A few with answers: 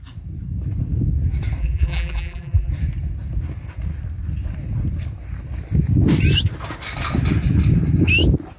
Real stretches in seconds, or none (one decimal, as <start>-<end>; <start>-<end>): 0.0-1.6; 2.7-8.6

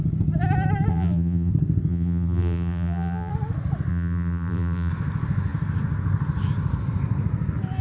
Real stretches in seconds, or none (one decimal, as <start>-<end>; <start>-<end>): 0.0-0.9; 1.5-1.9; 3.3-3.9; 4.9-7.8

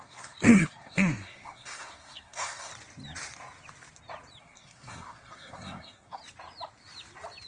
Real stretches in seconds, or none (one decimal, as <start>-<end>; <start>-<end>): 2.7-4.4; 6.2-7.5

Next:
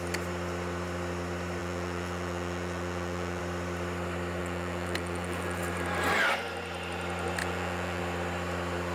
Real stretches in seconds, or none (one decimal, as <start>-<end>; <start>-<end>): 0.0-1.6; 3.4-4.4; 5.6-7.4; 8.0-8.9

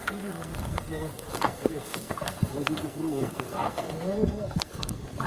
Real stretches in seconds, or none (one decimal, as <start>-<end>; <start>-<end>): none